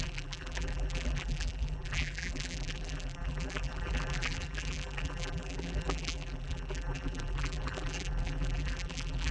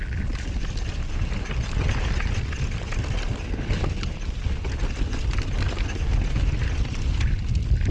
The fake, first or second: first